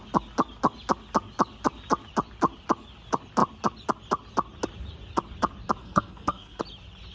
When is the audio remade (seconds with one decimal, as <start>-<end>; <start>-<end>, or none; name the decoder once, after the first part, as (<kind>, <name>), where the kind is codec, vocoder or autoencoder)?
5.8-6.6 (codec, SNAC)